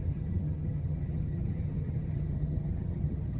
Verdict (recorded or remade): remade